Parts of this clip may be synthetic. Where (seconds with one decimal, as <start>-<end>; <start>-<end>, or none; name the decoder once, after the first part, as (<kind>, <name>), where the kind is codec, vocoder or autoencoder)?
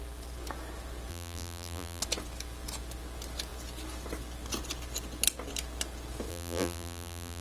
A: 1.1-2.0 (vocoder, BigVGAN v2); 6.3-7.4